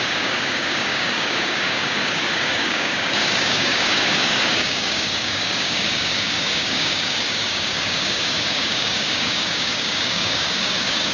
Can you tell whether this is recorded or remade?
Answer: remade